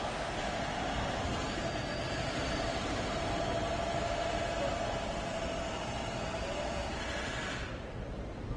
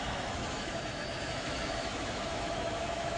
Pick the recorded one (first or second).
first